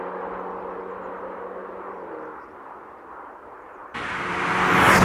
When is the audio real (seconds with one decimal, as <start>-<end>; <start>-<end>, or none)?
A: 0.0-5.0